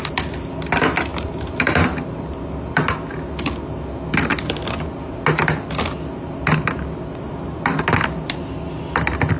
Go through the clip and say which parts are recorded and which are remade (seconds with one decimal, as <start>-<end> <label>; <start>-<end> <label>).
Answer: 0.0-1.1 recorded; 1.1-2.8 remade; 2.8-9.4 recorded